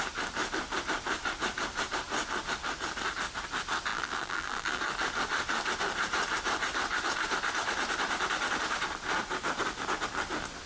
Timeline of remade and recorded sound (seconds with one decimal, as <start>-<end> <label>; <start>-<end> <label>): 0.0-3.9 recorded; 3.9-4.8 remade; 4.8-10.7 recorded